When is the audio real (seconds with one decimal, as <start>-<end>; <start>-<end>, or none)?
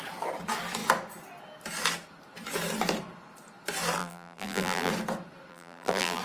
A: 0.0-4.0; 4.9-5.5